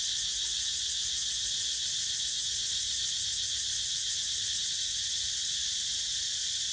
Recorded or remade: recorded